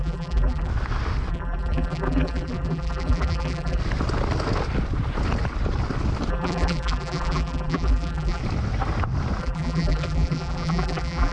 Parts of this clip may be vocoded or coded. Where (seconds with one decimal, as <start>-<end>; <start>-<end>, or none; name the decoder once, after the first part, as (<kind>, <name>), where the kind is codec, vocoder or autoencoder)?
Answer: 0.0-0.7 (vocoder, BigVGAN v2); 1.3-3.8; 6.3-8.4; 9.4-11.3